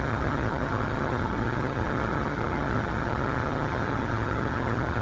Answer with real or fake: fake